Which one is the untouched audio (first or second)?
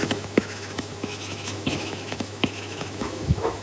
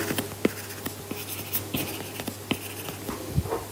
second